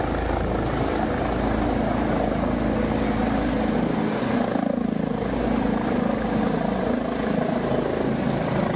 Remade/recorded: recorded